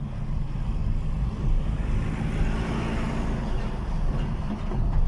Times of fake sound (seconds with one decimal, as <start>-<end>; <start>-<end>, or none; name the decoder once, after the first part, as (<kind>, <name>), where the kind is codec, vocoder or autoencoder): none